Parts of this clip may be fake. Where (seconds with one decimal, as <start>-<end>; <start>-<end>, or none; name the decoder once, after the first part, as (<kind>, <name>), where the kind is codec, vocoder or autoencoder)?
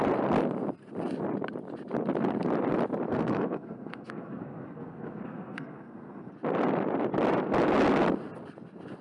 3.1-6.3 (codec, SNAC)